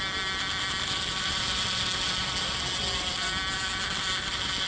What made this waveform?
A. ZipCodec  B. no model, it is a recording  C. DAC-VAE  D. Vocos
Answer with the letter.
B